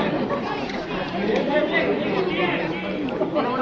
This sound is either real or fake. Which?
real